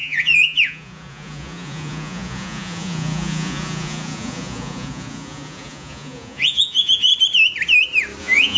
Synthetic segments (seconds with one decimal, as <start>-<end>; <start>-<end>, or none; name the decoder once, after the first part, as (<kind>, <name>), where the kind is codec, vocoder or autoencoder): 0.0-7.1 (vocoder, Vocos); 8.2-8.6